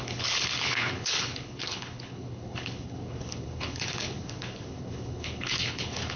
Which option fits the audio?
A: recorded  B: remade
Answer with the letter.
B